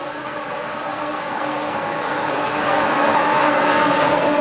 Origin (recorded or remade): remade